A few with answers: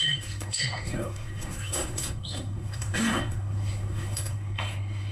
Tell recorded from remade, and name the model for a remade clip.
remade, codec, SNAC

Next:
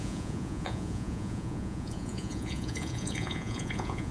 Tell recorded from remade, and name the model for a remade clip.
remade, vocoder, Vocos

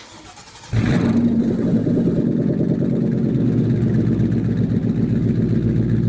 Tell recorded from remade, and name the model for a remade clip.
recorded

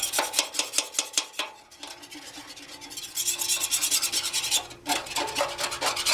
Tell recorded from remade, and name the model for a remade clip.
recorded